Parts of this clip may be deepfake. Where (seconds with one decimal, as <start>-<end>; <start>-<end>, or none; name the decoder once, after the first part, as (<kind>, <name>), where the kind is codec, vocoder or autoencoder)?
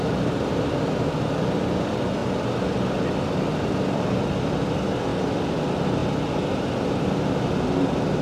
0.0-2.2 (vocoder, BigVGAN v2); 3.4-5.1; 5.6-6.0; 6.9-8.2